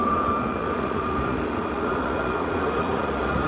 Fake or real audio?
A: fake